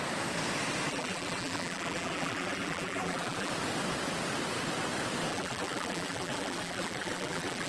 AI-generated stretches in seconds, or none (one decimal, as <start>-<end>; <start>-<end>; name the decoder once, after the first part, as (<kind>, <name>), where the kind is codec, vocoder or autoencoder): 0.9-3.5 (vocoder, BigVGAN v2); 5.3-7.7